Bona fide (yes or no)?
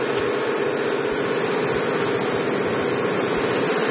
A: yes